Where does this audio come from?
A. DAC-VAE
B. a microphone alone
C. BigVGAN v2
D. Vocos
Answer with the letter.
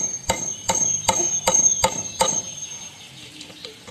C